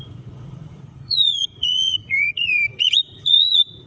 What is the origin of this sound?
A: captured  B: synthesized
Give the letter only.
B